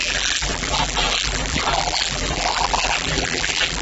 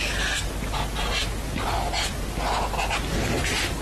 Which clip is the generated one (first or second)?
first